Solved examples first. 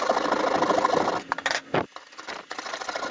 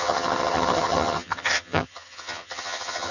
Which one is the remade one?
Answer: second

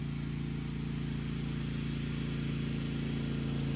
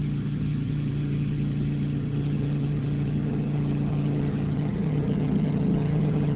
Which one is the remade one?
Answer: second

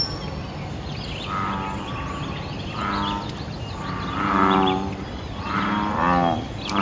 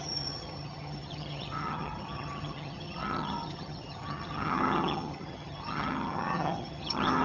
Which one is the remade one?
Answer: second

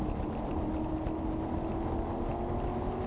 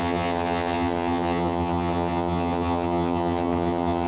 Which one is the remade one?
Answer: second